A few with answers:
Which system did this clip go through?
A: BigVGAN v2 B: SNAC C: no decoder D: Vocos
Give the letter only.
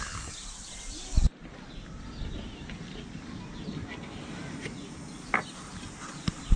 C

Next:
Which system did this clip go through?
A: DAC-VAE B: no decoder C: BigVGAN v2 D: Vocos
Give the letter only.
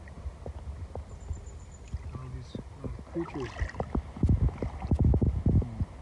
B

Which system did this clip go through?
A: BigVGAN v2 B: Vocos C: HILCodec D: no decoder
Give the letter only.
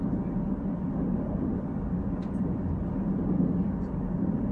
D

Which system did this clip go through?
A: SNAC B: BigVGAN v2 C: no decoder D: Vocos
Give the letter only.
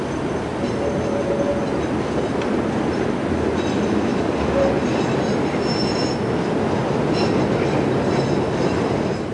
C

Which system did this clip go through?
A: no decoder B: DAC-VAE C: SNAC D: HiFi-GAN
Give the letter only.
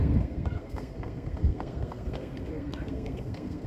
C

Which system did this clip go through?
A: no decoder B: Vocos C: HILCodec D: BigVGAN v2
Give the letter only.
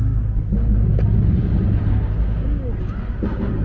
A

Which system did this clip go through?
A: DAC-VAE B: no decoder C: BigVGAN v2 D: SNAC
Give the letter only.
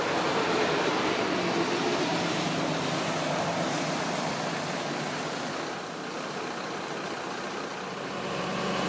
B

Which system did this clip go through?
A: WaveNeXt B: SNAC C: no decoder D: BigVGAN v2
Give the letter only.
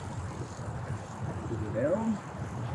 D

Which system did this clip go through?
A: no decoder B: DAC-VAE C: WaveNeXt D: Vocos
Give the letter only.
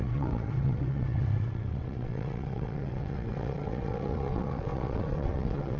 C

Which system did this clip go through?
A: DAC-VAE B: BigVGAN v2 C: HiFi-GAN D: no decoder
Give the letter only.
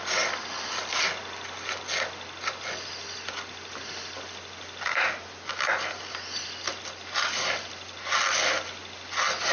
D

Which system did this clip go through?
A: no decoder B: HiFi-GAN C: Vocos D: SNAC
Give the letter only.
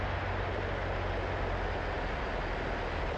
A